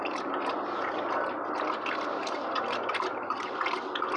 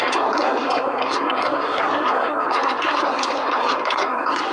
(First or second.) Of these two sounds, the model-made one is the second